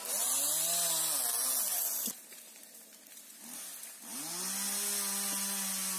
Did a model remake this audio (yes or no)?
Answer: no